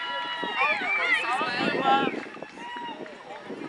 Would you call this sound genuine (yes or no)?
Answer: yes